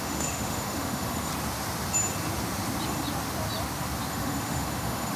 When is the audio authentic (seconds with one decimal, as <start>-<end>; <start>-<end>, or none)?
1.3-4.1